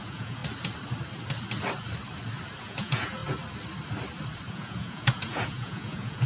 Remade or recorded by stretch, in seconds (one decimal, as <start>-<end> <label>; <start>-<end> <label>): 0.0-0.4 remade; 0.4-2.6 recorded; 2.6-3.2 remade; 3.2-4.5 recorded; 4.5-6.3 remade